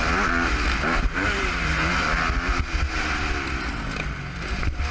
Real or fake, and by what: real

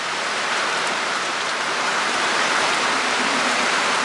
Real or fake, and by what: fake, vocoder, BigVGAN v2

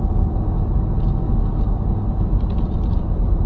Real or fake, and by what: real